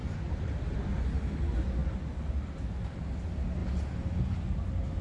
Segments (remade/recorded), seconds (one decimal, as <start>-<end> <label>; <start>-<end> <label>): 0.0-5.0 recorded